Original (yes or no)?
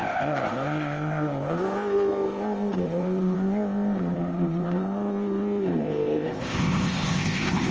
no